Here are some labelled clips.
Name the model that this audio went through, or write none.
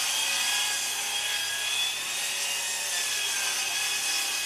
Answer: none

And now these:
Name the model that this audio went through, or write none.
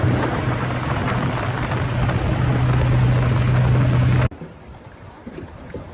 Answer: none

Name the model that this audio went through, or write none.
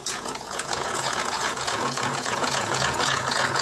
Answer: vocoder, Vocos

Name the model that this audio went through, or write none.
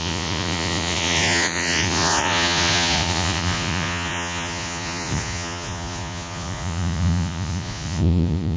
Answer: vocoder, Vocos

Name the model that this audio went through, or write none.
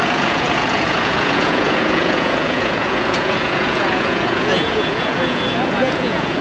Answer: vocoder, Vocos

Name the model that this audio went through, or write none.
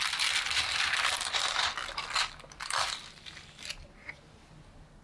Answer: none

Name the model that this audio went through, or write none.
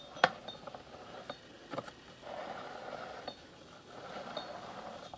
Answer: none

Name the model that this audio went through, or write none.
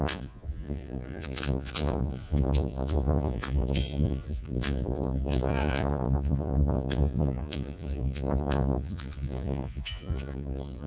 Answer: vocoder, Vocos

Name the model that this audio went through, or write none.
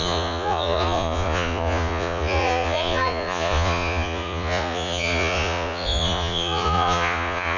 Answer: vocoder, Vocos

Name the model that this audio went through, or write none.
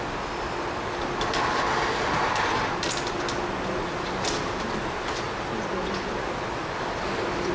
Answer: none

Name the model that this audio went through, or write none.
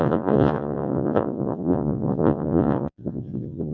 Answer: vocoder, Vocos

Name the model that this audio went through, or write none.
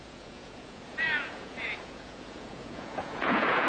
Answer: vocoder, Vocos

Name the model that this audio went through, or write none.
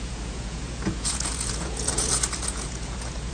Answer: vocoder, Vocos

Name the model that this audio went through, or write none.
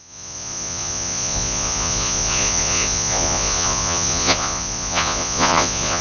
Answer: vocoder, Vocos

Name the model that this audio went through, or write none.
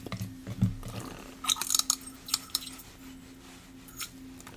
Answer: none